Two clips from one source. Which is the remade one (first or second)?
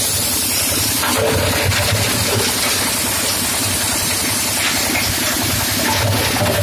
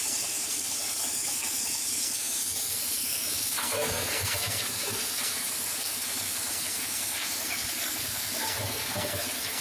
second